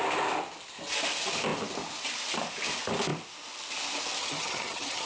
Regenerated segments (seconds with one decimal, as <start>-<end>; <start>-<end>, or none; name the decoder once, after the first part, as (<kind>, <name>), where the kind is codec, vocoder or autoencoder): 4.2-5.1 (vocoder, HiFi-GAN)